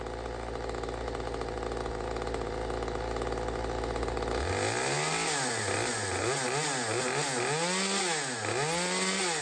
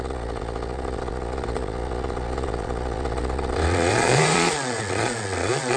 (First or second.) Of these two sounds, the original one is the first